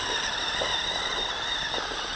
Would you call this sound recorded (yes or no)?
yes